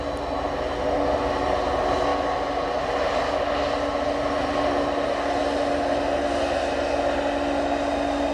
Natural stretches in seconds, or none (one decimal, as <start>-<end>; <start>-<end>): 0.0-8.3